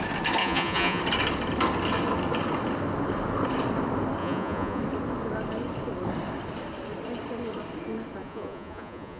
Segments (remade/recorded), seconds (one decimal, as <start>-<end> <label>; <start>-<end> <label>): 0.0-0.4 recorded; 0.4-1.0 remade; 1.0-4.2 recorded; 4.2-4.8 remade; 4.8-8.2 recorded; 8.2-9.2 remade